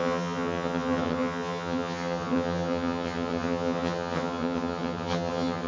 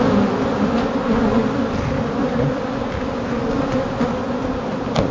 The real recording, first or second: second